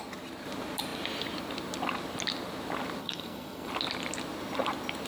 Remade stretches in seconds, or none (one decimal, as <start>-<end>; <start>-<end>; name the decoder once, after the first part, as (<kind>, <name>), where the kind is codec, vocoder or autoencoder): 3.0-3.7 (codec, SNAC)